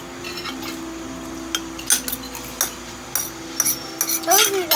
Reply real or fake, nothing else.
real